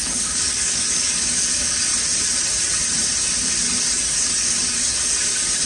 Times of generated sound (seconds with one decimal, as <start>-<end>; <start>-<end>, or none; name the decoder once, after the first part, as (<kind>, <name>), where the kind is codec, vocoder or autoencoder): 0.0-1.9 (codec, DAC); 3.8-5.7